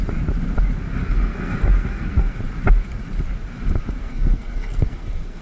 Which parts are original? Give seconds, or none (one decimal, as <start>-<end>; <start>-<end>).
0.0-1.0; 2.4-4.0